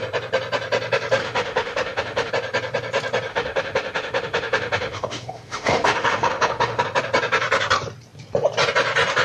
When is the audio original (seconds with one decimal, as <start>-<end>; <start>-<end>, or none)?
0.0-1.2; 2.3-3.3; 6.8-9.2